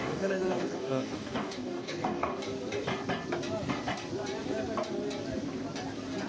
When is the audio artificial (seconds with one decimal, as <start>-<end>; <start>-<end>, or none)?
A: 0.0-2.3